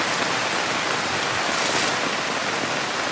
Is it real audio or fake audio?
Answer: real